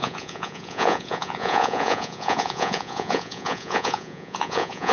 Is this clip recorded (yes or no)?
no